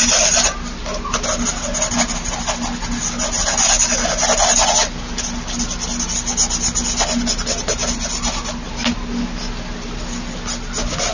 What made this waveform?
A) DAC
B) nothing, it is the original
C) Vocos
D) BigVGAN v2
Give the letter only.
B